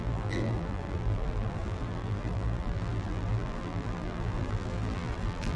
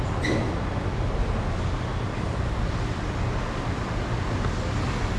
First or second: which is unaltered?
second